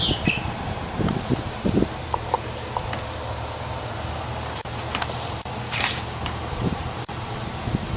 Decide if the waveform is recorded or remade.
remade